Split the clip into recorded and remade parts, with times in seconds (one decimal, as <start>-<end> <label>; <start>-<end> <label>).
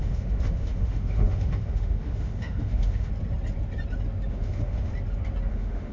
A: 0.0-3.1 remade; 3.1-4.3 recorded; 4.3-4.9 remade; 4.9-5.5 recorded; 5.5-5.9 remade